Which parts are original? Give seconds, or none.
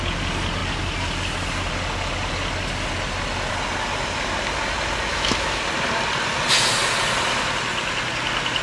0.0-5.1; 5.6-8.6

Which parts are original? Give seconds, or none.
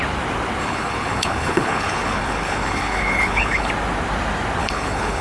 0.0-0.6; 3.7-4.6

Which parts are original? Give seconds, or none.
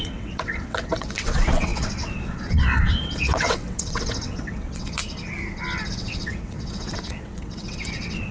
5.0-5.9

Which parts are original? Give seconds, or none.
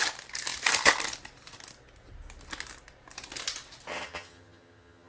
0.0-3.9